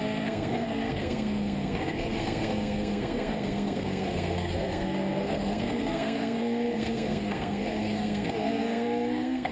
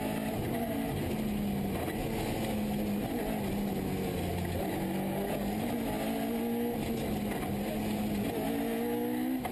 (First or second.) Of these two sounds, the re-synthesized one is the first